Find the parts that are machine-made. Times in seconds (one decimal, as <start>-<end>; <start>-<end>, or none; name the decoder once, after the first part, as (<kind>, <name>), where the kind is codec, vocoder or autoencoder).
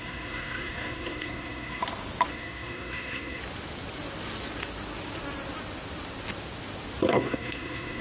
0.0-1.8 (codec, SNAC); 2.3-3.4; 7.1-8.0